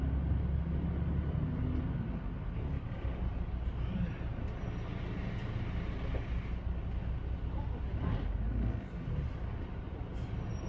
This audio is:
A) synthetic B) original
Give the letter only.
B